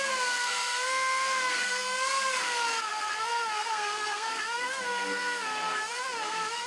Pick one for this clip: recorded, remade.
remade